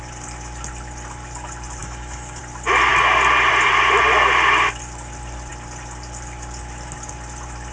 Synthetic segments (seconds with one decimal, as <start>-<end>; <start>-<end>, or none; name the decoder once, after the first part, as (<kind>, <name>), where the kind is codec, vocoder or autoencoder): 1.8-2.4 (autoencoder, DAC-VAE)